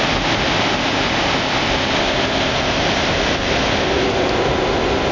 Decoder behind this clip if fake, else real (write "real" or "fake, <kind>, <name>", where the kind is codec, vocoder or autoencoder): real